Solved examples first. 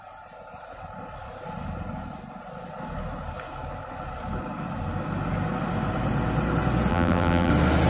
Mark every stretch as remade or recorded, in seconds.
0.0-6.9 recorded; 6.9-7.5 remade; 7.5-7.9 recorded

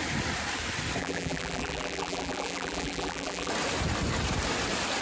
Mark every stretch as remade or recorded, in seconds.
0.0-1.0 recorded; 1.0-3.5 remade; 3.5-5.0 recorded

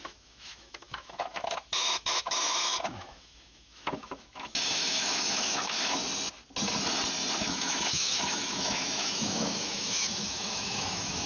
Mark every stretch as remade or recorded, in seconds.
0.0-6.0 remade; 6.0-7.4 recorded; 7.4-11.3 remade

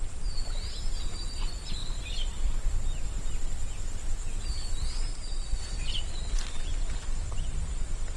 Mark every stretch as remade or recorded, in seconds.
0.0-1.8 recorded; 1.8-2.8 remade; 2.8-5.1 recorded; 5.1-5.6 remade; 5.6-8.2 recorded